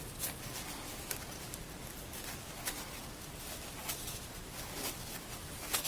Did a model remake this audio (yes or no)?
no